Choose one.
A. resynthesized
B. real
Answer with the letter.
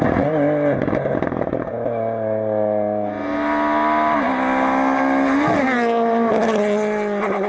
B